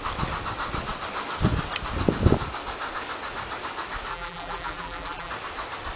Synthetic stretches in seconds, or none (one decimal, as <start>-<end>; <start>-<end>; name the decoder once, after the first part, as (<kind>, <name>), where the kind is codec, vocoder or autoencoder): 4.1-5.3 (vocoder, BigVGAN v2)